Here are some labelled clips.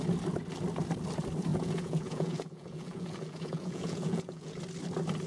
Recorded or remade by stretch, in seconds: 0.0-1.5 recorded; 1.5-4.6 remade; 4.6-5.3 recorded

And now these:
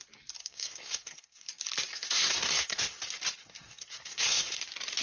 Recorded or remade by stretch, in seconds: 0.0-0.4 recorded; 0.4-1.5 remade; 1.5-1.9 recorded; 1.9-3.0 remade; 3.0-3.4 recorded; 3.4-4.6 remade; 4.6-5.0 recorded

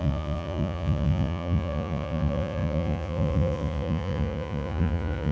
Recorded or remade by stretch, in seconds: 0.0-5.3 remade

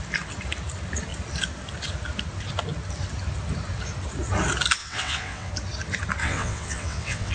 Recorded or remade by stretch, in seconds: 0.0-4.8 recorded; 4.8-5.5 remade; 5.5-6.2 recorded; 6.2-7.3 remade